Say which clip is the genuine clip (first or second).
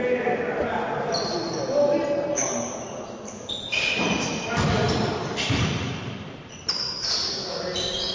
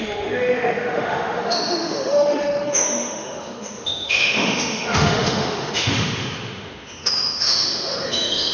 first